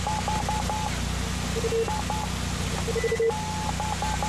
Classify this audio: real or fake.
real